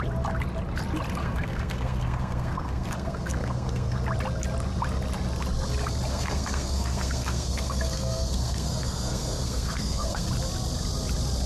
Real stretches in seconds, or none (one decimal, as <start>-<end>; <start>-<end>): 0.0-1.2; 4.0-6.1; 10.3-11.5